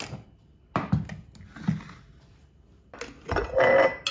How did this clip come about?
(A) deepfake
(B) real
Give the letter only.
B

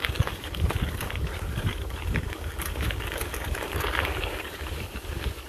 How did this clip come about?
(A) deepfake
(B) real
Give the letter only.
A